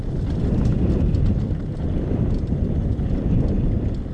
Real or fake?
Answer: fake